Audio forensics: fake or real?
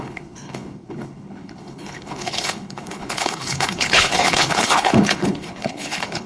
fake